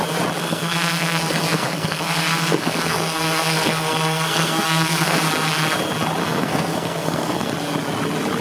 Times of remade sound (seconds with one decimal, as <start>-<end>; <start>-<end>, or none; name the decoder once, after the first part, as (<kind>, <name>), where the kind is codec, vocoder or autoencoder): 0.4-5.2 (codec, SNAC); 6.2-7.5